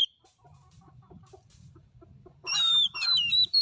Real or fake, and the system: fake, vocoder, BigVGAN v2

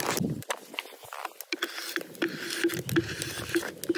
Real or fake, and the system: real